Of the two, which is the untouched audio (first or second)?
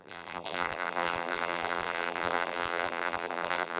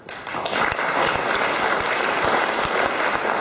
second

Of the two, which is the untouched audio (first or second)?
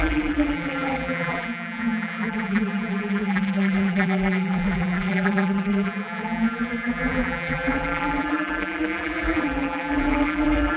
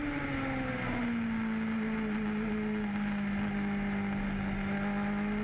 second